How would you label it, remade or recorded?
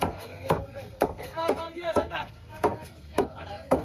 remade